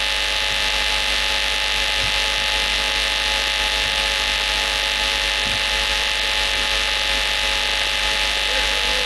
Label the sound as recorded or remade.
recorded